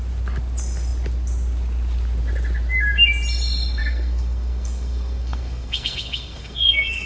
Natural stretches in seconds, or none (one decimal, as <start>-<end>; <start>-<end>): 0.0-3.8

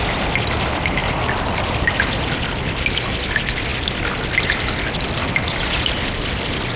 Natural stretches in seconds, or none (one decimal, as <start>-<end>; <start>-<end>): 0.0-6.8

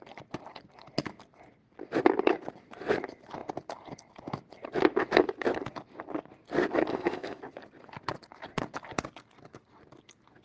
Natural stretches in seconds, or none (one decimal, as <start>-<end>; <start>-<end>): 0.0-6.9; 7.4-10.4